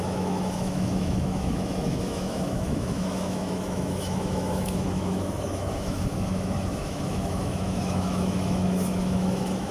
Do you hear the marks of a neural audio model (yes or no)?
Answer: yes